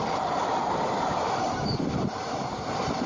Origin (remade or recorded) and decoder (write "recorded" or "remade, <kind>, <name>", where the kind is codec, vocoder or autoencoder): remade, vocoder, BigVGAN v2